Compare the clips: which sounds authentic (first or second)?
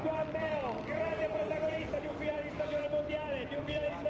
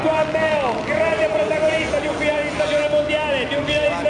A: second